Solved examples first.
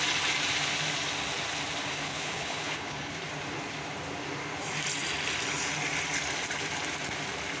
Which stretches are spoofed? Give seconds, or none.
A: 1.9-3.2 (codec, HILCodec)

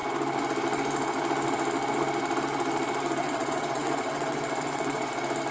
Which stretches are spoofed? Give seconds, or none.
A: 3.2-5.1 (vocoder, WaveNeXt)